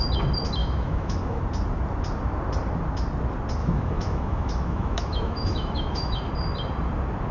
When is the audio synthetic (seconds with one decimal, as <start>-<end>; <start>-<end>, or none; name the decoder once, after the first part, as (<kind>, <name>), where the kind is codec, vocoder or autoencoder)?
0.6-1.4 (autoencoder, DAC-VAE); 3.6-6.3